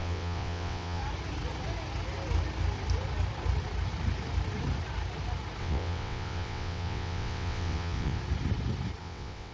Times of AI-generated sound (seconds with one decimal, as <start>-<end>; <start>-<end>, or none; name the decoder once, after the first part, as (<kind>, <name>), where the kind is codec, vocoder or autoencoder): 0.0-1.0 (vocoder, WaveNeXt); 5.6-8.2; 9.0-9.5